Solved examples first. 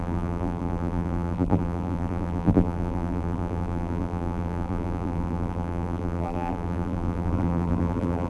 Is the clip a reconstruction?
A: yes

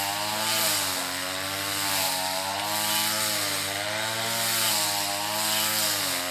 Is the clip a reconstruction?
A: no